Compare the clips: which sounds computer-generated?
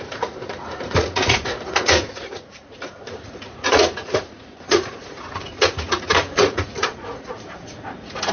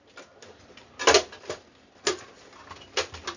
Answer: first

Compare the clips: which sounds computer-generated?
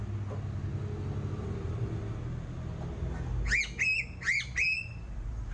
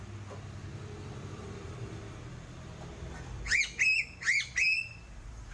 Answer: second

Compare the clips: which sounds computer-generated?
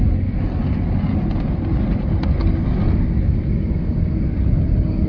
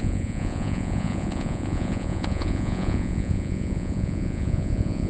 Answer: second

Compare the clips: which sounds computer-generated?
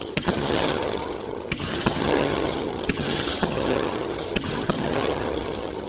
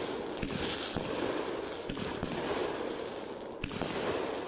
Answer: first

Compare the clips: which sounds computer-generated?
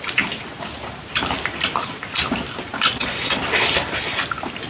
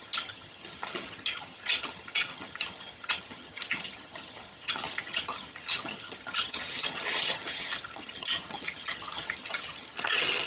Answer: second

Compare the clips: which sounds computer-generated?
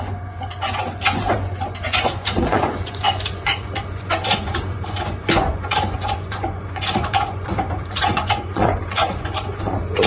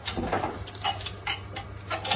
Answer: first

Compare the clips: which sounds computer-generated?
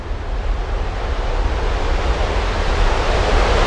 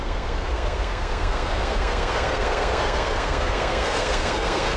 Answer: second